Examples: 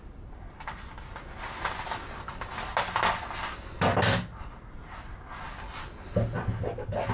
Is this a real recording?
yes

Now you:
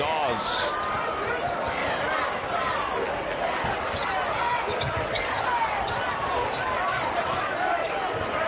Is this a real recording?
yes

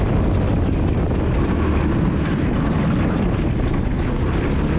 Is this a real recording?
yes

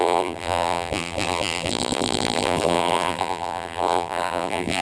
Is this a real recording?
no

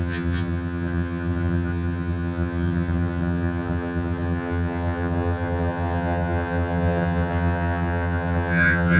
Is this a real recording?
no